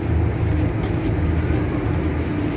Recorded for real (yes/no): yes